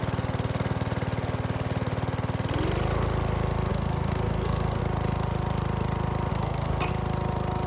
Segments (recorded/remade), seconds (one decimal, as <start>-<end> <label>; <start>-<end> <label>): 0.0-3.7 recorded; 3.7-4.8 remade; 4.8-6.3 recorded; 6.3-6.9 remade; 6.9-7.7 recorded